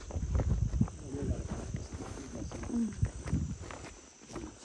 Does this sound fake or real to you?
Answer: real